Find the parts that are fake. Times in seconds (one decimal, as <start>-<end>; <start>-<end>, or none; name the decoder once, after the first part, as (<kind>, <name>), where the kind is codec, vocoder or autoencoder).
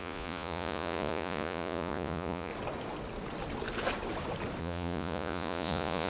0.0-2.5 (vocoder, Vocos); 4.6-6.1